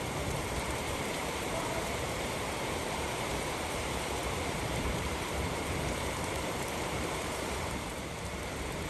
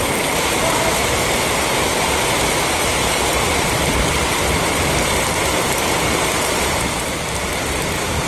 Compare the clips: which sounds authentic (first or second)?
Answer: second